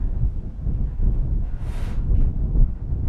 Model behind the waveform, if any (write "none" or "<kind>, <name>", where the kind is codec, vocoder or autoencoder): none